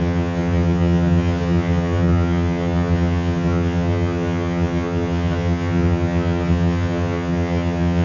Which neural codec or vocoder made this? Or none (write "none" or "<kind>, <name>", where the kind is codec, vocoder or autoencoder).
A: vocoder, HiFi-GAN